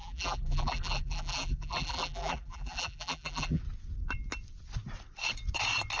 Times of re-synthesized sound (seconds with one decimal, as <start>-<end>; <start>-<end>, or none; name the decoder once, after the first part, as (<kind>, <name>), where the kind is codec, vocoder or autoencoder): 0.0-3.6 (vocoder, BigVGAN v2)